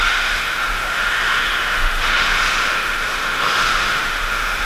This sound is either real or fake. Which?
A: fake